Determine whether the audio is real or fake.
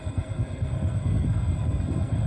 fake